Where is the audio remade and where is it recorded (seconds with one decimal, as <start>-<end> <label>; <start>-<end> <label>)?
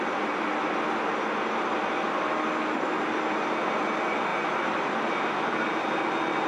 0.0-6.5 recorded